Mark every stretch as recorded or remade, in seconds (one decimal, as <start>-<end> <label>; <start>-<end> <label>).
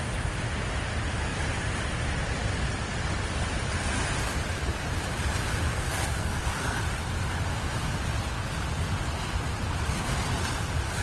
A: 0.0-5.7 recorded; 5.7-6.8 remade; 6.8-11.0 recorded